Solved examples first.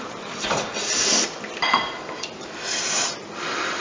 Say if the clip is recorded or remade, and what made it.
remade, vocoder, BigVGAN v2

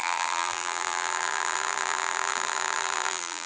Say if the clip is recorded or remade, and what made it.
remade, vocoder, BigVGAN v2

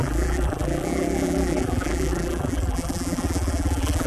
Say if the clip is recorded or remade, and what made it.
remade, vocoder, BigVGAN v2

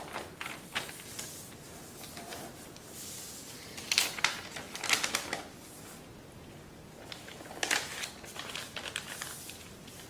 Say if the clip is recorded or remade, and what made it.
recorded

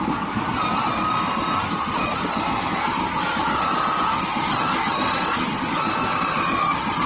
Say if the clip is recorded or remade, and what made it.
recorded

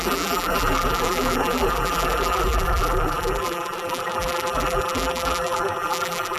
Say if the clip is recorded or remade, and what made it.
remade, vocoder, BigVGAN v2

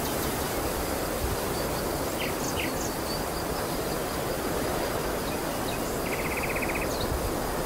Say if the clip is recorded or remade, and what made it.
recorded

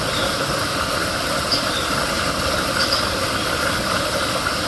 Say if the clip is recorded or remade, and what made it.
remade, vocoder, BigVGAN v2